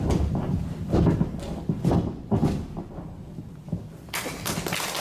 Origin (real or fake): real